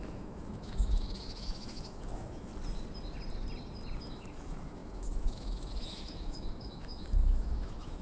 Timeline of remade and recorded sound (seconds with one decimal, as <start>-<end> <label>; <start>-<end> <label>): 0.0-2.5 remade; 2.5-4.0 recorded; 4.0-8.0 remade